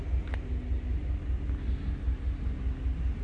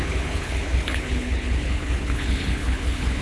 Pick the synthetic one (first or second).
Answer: second